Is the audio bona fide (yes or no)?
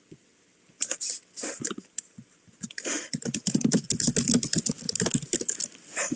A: yes